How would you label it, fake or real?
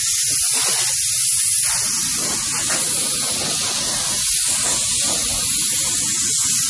real